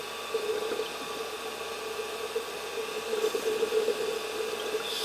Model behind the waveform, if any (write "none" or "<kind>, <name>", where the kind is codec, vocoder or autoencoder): none